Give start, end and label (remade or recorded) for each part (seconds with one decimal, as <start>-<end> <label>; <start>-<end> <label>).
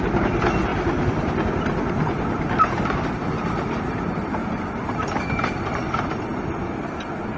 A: 0.0-0.7 recorded; 0.7-1.3 remade; 1.3-4.4 recorded; 4.4-6.1 remade; 6.1-7.4 recorded